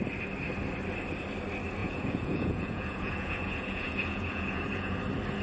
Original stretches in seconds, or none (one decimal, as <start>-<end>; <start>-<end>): 0.0-1.8; 5.0-5.4